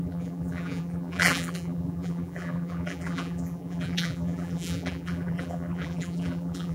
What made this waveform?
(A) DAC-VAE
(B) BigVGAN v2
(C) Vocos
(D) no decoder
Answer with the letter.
B